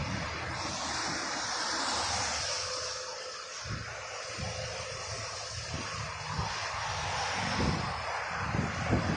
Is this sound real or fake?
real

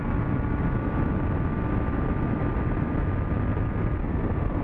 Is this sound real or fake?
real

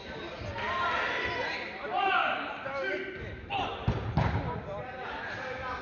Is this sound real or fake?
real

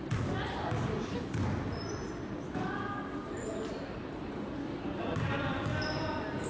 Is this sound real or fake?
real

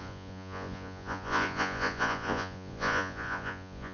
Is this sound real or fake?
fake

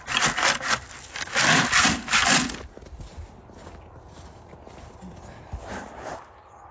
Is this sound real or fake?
real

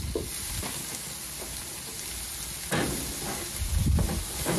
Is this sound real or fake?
real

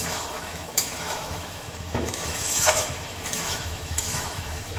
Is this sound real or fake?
fake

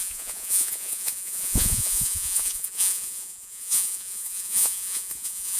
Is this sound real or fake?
fake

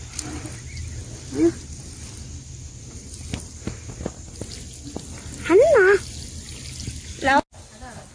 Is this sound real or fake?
real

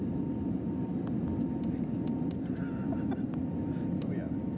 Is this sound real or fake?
real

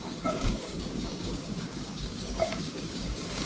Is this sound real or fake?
fake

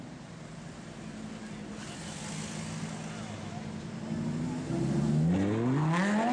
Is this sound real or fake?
real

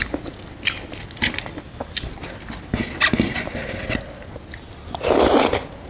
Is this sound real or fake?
real